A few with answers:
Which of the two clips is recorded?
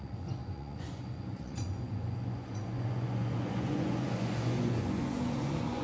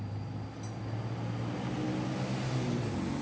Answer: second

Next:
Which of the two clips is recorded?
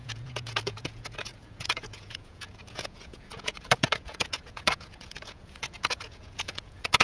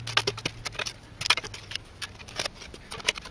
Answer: second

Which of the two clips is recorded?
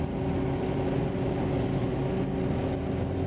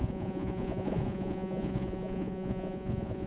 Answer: first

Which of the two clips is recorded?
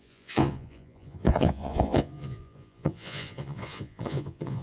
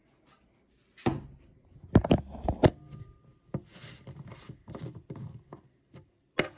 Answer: second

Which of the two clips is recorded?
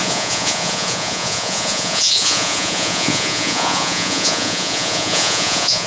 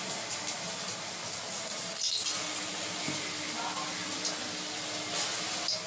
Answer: second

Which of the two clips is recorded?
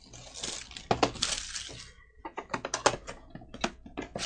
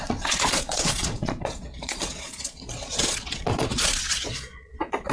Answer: first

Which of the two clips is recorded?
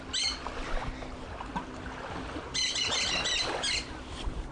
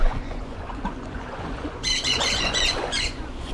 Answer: first